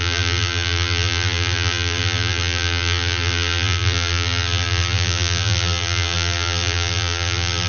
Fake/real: fake